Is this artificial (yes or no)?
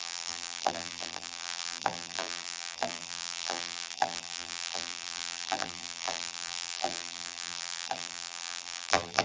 yes